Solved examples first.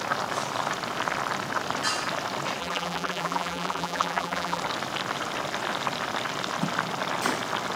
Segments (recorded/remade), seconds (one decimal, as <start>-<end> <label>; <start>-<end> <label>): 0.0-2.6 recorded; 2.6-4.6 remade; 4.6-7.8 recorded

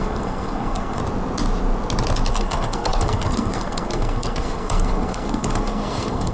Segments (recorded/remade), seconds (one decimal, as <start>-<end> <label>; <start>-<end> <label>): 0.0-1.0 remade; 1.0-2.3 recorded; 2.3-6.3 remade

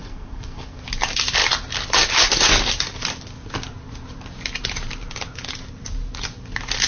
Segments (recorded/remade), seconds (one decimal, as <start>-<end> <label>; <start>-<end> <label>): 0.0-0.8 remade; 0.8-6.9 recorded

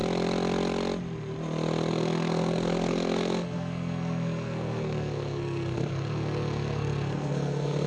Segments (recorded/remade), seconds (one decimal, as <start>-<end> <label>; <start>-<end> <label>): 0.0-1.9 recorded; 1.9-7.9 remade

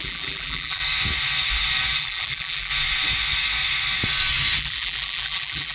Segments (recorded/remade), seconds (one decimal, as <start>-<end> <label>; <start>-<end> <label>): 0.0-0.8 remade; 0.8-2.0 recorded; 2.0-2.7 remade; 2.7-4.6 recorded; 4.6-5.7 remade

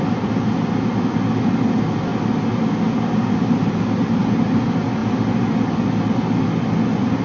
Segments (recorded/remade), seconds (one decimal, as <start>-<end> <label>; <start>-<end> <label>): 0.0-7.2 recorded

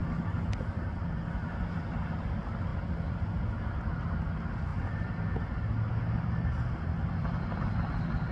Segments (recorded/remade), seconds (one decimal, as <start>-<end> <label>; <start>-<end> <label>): 0.0-8.3 recorded

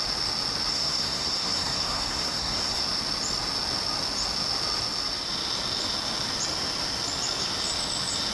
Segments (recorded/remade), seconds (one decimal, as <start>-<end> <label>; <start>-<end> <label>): 0.0-0.7 recorded; 0.7-2.8 remade; 2.8-8.3 recorded